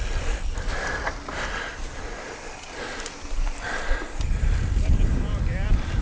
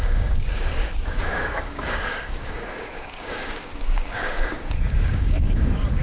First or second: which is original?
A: first